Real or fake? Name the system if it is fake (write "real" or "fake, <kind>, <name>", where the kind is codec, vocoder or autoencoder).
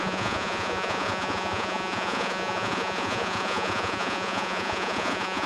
fake, vocoder, Vocos